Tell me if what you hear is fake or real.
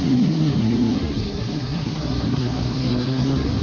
fake